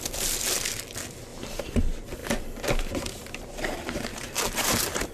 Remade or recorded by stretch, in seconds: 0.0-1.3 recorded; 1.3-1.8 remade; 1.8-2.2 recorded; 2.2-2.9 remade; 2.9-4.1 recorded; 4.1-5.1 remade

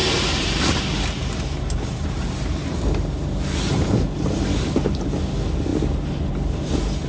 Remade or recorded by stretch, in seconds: 0.0-0.5 remade; 0.5-1.2 recorded; 1.2-5.3 remade; 5.3-7.1 recorded

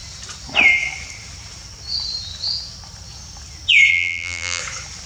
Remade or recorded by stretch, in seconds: 0.0-3.9 recorded; 3.9-4.6 remade; 4.6-5.1 recorded

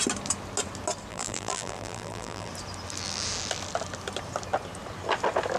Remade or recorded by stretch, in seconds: 0.0-1.1 recorded; 1.1-2.5 remade; 2.5-5.6 recorded

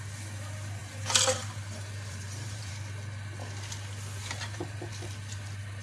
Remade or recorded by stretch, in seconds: 0.0-0.8 recorded; 0.8-2.7 remade; 2.7-4.2 recorded; 4.2-4.9 remade; 4.9-5.8 recorded

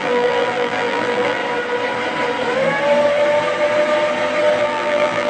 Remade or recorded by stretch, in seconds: 0.0-1.4 remade; 1.4-4.6 recorded; 4.6-5.3 remade

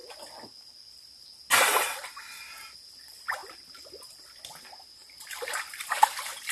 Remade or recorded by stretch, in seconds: 0.0-1.2 remade; 1.2-3.4 recorded; 3.4-4.5 remade; 4.5-6.5 recorded

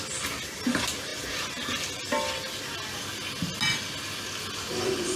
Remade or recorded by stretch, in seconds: 0.0-5.2 recorded